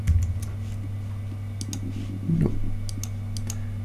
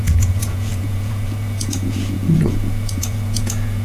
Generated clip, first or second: second